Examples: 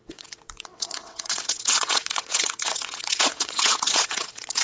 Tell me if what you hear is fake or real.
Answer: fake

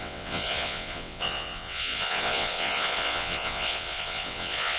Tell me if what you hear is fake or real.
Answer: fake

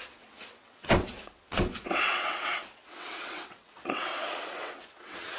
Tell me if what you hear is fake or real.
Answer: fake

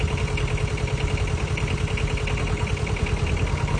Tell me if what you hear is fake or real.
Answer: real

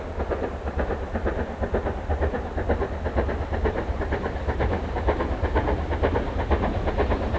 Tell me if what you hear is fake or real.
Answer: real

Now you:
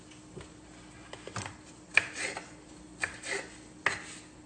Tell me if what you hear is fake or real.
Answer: real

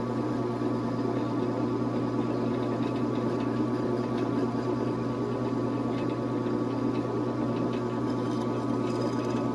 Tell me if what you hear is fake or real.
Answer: real